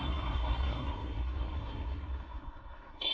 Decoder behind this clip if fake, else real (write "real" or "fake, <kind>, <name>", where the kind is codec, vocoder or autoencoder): fake, codec, SNAC